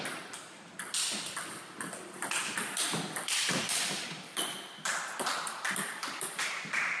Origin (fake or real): fake